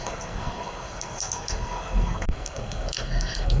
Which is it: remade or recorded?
remade